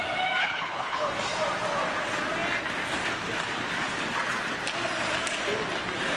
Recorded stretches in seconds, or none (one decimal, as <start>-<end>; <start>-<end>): 0.0-0.4; 1.1-6.2